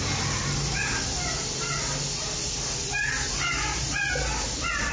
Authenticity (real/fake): real